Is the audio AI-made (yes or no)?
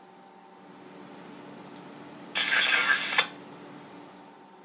no